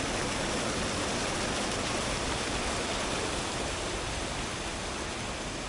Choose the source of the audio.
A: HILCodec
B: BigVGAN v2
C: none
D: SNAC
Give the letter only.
C